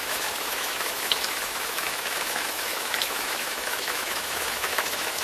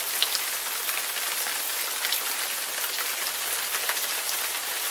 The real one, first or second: second